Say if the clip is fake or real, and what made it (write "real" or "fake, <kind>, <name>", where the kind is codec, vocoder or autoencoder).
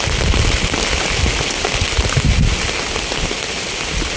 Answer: real